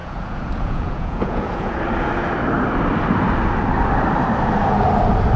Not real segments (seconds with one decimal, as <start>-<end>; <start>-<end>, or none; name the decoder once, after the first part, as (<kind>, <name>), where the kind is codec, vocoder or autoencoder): 0.0-1.8 (vocoder, Vocos)